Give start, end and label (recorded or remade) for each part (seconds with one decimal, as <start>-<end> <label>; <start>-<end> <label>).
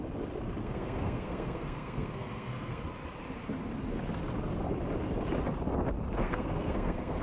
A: 0.0-0.6 recorded; 0.6-2.8 remade; 2.8-6.2 recorded; 6.2-7.2 remade